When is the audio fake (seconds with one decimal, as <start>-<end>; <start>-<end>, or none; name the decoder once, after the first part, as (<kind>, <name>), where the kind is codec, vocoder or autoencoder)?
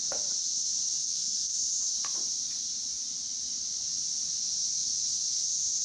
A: 1.0-1.7 (codec, SNAC)